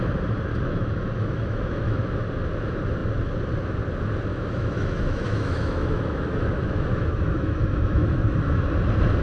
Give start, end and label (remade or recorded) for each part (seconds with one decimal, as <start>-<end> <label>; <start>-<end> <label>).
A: 0.0-0.5 recorded; 0.5-2.0 remade; 2.0-4.3 recorded; 4.3-8.6 remade; 8.6-9.2 recorded